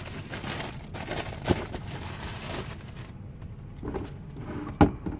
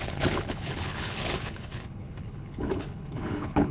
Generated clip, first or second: second